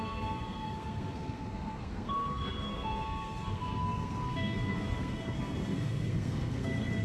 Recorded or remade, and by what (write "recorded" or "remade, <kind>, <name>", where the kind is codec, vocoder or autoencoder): remade, codec, SNAC